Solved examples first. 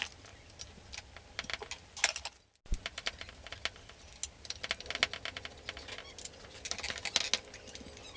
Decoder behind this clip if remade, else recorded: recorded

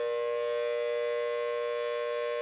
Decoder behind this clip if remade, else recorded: recorded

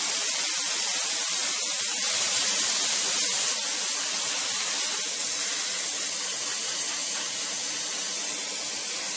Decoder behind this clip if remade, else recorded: recorded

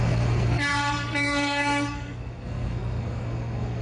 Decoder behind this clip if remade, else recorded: remade, codec, SNAC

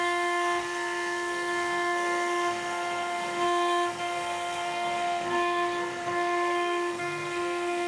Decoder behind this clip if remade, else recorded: remade, codec, SNAC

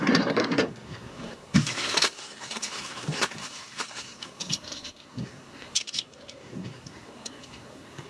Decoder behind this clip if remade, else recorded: remade, codec, SNAC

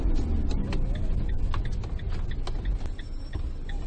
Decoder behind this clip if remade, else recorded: recorded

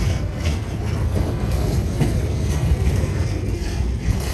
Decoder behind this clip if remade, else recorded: remade, codec, SNAC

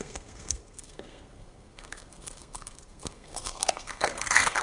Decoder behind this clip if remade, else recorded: remade, codec, SNAC